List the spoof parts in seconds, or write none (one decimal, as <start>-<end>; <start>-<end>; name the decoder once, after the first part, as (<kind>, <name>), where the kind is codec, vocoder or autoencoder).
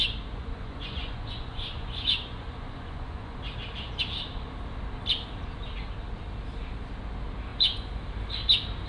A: 0.0-3.5 (vocoder, Vocos); 7.5-8.0